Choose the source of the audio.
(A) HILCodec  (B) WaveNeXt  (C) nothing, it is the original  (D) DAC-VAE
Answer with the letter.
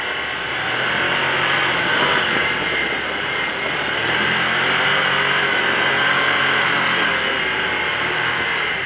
C